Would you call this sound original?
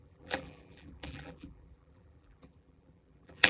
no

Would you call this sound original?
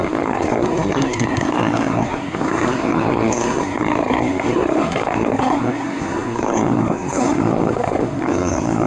no